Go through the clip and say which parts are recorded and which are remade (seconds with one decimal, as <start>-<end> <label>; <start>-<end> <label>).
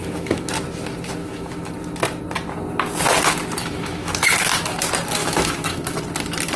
0.0-0.5 remade; 0.5-1.2 recorded; 1.2-1.7 remade; 1.7-3.6 recorded; 3.6-4.1 remade; 4.1-5.2 recorded; 5.2-6.0 remade; 6.0-6.6 recorded